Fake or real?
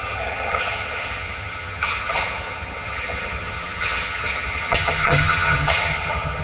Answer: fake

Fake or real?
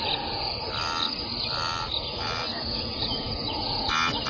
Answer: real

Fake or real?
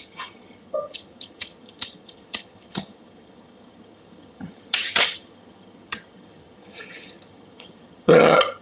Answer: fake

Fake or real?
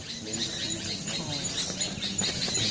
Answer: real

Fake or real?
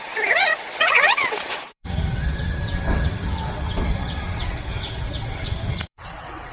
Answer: fake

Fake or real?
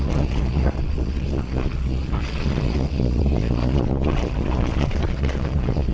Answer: fake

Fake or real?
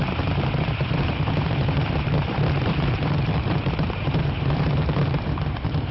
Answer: fake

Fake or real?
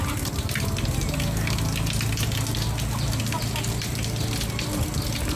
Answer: real